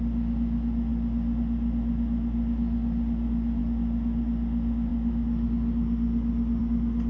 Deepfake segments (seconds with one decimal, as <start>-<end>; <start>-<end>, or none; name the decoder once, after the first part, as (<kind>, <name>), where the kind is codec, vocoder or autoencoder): none